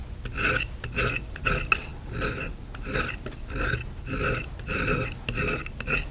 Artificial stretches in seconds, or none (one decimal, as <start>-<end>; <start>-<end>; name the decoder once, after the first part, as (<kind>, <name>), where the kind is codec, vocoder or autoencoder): none